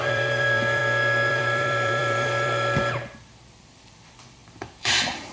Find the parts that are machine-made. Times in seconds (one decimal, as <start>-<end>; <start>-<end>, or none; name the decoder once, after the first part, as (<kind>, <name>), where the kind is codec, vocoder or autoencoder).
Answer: 0.0-0.8 (vocoder, BigVGAN v2); 1.3-5.3